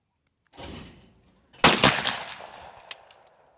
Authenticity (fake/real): real